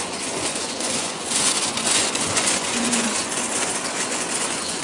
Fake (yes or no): yes